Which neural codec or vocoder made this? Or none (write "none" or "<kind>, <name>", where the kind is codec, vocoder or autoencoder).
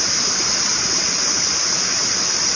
none